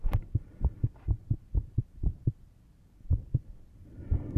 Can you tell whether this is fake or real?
fake